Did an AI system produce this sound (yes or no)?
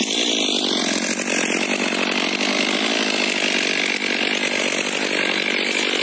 no